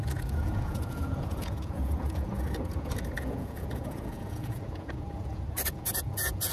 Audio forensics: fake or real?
fake